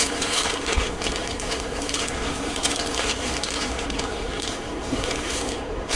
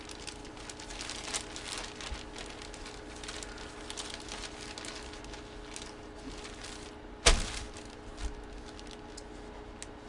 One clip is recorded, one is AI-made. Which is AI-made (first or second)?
first